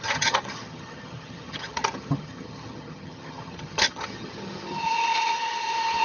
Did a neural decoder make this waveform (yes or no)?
yes